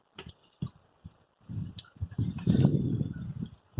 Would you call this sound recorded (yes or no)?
yes